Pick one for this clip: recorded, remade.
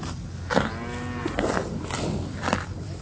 recorded